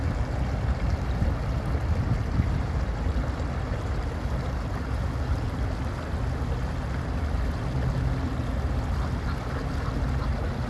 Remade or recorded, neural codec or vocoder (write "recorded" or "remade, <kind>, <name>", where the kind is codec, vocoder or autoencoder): recorded